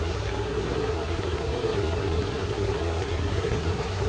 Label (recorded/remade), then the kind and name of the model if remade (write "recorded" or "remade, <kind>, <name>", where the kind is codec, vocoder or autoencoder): remade, codec, SNAC